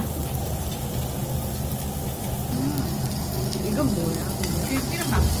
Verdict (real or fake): real